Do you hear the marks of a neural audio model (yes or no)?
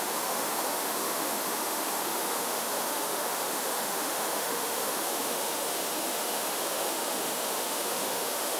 yes